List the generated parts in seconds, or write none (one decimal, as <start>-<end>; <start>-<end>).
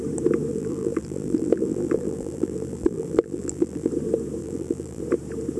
0.5-3.9; 4.4-5.0